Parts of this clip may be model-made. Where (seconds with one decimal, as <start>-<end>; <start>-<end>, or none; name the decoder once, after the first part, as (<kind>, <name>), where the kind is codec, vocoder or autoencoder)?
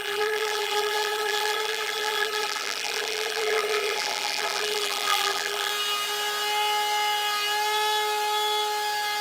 0.0-5.7 (vocoder, BigVGAN v2)